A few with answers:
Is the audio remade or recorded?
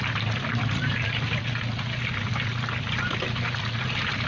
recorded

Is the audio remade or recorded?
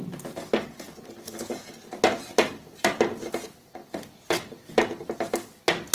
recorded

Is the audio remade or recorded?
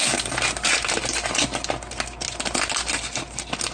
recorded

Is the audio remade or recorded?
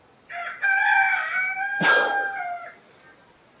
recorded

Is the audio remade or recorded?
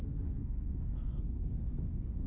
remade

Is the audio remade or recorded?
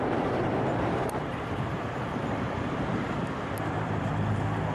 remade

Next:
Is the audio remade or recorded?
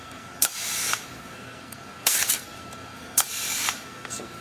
remade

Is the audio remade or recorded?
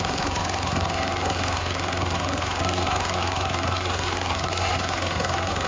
remade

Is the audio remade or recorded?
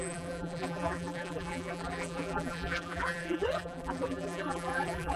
remade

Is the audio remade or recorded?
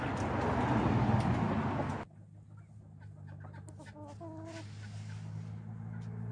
recorded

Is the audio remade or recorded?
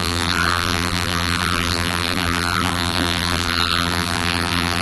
remade